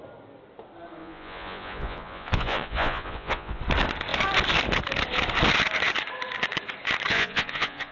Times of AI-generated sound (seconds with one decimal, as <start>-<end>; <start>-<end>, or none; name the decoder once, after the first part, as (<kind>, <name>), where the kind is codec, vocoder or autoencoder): 1.0-3.6 (vocoder, Vocos); 7.1-7.9